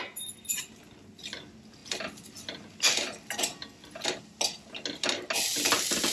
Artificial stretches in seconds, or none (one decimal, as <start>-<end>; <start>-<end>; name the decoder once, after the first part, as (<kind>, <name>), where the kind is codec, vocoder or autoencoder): none